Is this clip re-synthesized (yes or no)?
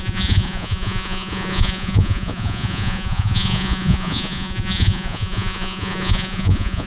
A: yes